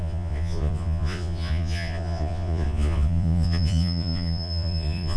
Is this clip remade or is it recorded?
remade